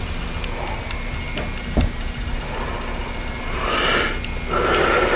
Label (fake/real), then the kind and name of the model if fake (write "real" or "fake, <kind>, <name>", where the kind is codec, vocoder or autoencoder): real